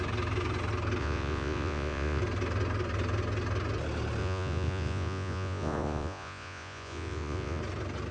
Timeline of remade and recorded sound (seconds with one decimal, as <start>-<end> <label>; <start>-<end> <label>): 0.0-1.0 recorded; 1.0-2.2 remade; 2.2-4.2 recorded; 4.2-7.6 remade; 7.6-8.1 recorded